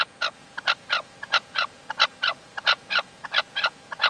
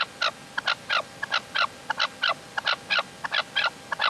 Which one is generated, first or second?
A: first